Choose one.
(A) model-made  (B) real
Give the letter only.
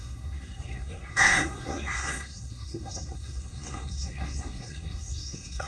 A